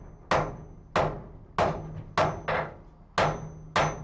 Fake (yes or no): no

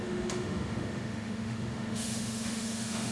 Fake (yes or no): yes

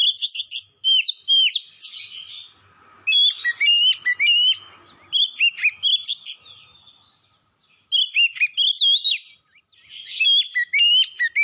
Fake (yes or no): no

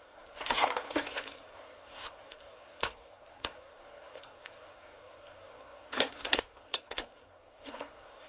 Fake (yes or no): yes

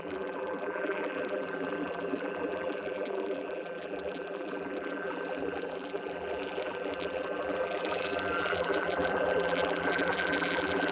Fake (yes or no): yes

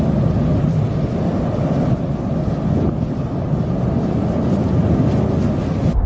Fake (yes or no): no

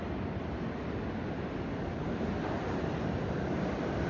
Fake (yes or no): no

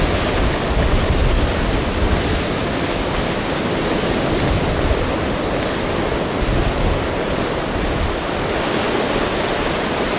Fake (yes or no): no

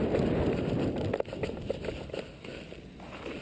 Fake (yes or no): no